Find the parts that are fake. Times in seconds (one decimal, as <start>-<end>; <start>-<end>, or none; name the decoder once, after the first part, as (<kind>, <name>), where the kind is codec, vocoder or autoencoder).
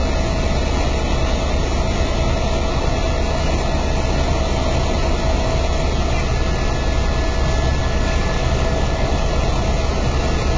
7.8-9.1 (codec, DAC)